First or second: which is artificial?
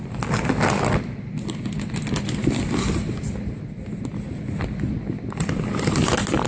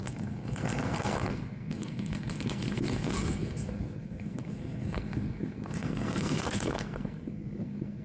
second